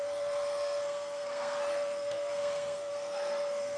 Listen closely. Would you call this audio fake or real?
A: fake